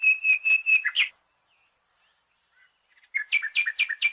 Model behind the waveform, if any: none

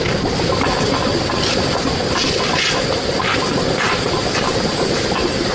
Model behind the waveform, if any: none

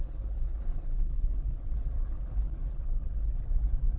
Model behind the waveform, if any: codec, HILCodec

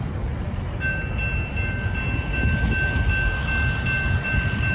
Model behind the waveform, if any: none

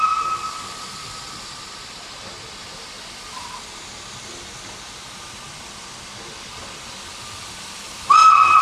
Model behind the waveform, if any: none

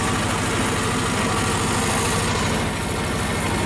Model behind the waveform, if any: none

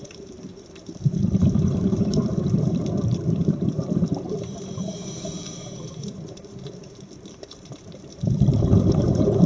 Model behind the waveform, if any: vocoder, BigVGAN v2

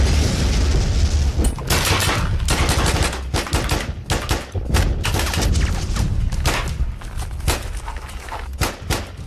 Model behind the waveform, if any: none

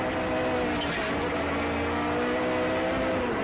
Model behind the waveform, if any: none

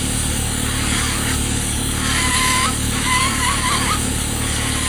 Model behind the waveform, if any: codec, DAC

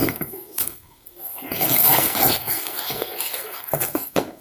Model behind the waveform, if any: codec, SNAC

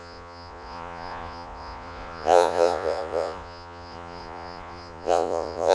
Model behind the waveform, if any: vocoder, Vocos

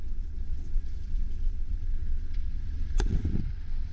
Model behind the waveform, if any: vocoder, WaveNeXt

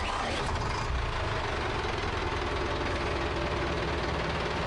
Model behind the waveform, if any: none